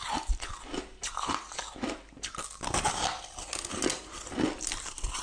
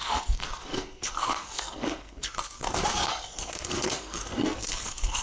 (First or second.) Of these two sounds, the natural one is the first